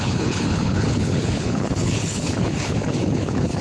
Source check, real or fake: fake